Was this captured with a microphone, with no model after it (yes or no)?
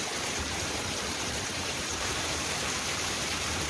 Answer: no